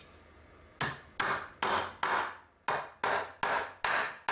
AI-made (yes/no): no